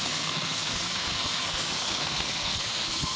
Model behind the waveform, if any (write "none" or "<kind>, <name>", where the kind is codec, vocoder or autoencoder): codec, SNAC